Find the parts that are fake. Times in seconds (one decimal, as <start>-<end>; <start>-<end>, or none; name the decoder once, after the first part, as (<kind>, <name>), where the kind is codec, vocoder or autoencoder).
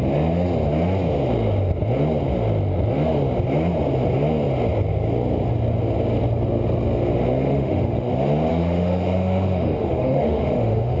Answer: 7.5-8.1 (autoencoder, DAC-VAE); 8.5-11.0